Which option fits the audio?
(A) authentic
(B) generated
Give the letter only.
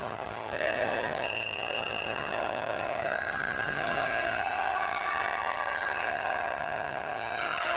B